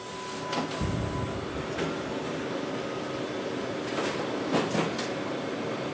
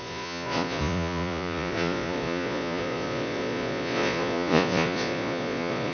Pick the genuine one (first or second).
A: first